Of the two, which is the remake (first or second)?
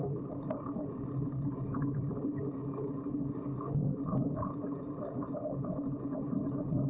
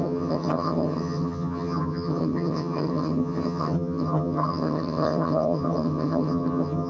second